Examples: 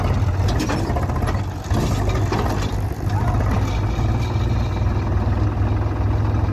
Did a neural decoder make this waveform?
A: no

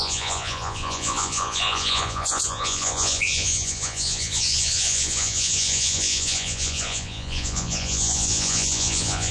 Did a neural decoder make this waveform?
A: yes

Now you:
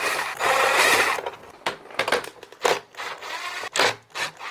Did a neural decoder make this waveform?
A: no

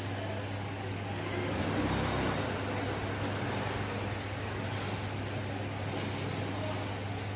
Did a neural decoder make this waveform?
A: no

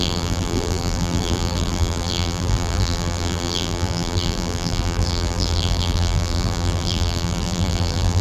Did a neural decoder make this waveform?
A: yes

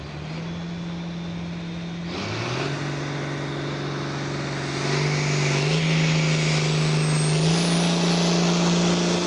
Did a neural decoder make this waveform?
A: no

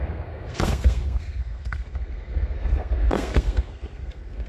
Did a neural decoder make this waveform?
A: yes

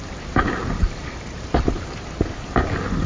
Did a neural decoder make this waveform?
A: no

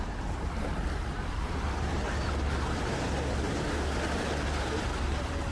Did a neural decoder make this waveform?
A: no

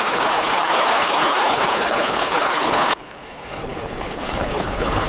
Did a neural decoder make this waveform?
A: yes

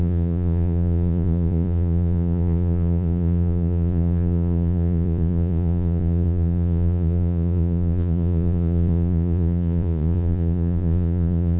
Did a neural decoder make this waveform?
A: yes